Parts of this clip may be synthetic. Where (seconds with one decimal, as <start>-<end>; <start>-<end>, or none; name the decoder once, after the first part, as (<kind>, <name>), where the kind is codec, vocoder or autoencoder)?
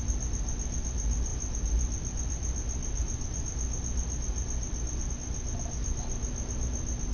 none